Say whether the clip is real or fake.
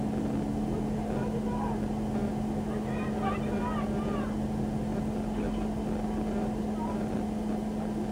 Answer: real